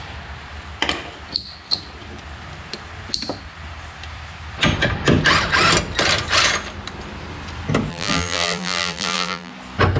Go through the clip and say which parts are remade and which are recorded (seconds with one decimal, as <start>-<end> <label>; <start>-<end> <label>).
0.0-7.9 recorded; 7.9-9.5 remade; 9.5-10.0 recorded